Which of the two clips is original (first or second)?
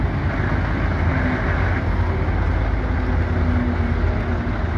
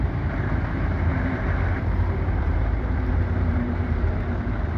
first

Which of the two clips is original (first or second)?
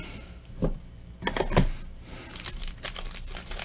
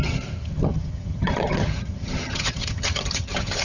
first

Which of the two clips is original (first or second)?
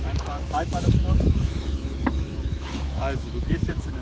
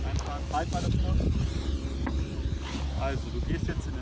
second